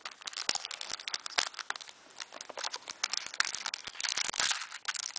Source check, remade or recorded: recorded